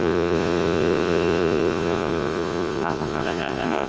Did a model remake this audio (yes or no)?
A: yes